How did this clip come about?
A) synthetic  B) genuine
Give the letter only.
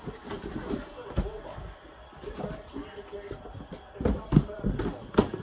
B